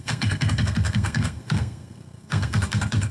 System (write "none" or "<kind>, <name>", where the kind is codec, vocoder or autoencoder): codec, SNAC